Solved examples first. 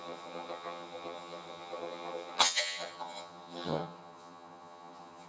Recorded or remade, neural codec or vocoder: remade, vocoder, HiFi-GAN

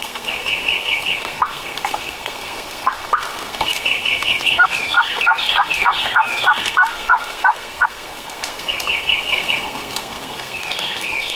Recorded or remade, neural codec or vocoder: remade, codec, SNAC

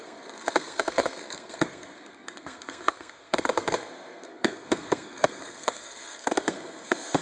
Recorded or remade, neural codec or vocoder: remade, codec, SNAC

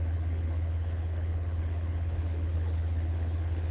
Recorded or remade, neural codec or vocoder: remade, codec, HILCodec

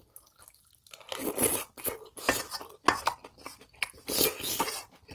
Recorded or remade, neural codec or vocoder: recorded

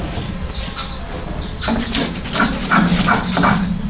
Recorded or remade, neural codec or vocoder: recorded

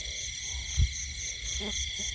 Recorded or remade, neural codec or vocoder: remade, vocoder, BigVGAN v2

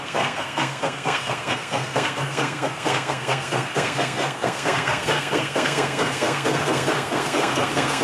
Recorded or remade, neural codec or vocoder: remade, codec, SNAC